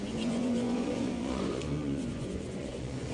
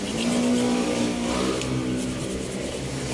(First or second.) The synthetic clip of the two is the first